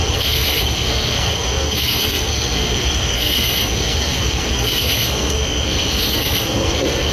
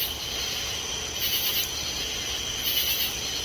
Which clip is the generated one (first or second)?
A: first